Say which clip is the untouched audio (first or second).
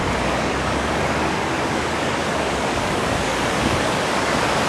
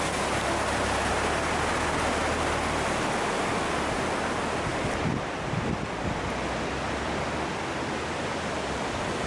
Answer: second